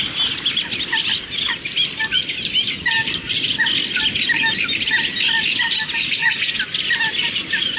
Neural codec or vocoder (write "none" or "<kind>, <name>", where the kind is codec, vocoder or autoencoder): none